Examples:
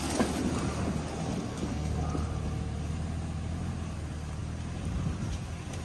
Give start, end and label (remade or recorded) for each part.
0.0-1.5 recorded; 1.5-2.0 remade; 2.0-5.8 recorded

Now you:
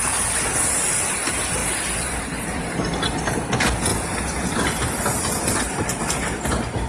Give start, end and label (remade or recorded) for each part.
0.0-6.9 recorded

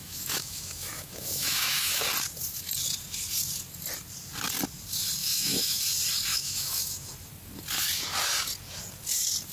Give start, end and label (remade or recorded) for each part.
0.0-2.0 remade; 2.0-5.2 recorded; 5.2-5.8 remade; 5.8-6.3 recorded; 6.3-7.1 remade; 7.1-9.5 recorded

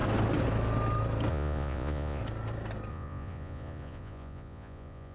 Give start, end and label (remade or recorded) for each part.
0.0-1.3 recorded; 1.3-2.2 remade; 2.2-2.9 recorded; 2.9-5.1 remade

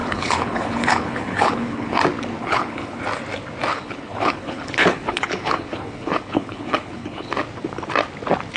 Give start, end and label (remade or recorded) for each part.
0.0-2.0 remade; 2.0-2.4 recorded; 2.4-3.0 remade; 3.0-3.7 recorded; 3.7-7.3 remade; 7.3-8.6 recorded

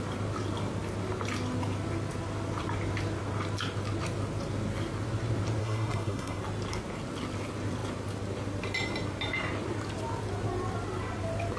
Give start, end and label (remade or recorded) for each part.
0.0-5.6 recorded; 5.6-6.4 remade; 6.4-11.6 recorded

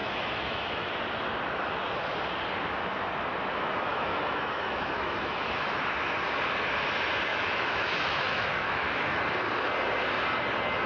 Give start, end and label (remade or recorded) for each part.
0.0-0.9 remade; 0.9-3.9 recorded; 3.9-5.6 remade; 5.6-7.3 recorded; 7.3-9.2 remade; 9.2-10.9 recorded